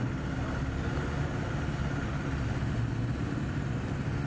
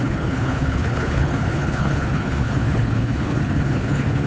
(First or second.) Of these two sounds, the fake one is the second